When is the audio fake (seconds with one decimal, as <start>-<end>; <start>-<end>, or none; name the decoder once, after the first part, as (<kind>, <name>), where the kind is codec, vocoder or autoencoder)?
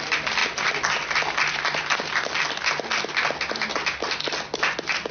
none